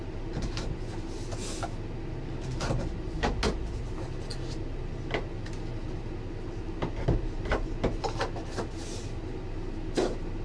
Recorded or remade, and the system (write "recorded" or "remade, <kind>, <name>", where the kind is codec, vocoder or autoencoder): recorded